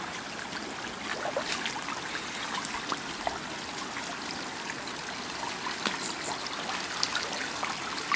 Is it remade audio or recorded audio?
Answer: recorded